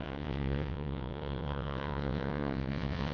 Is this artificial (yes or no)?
yes